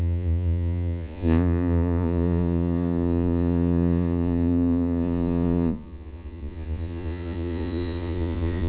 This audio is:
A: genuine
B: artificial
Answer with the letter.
B